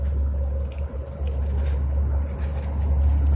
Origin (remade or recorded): recorded